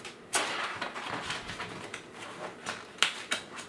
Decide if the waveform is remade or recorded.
recorded